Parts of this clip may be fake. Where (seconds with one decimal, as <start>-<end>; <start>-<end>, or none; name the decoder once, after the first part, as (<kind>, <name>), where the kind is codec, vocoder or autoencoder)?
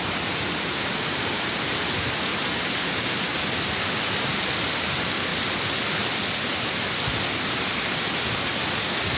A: 0.0-2.3 (vocoder, BigVGAN v2); 2.8-5.3